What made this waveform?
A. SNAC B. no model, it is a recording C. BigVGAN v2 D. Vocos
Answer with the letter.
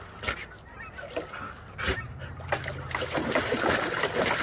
B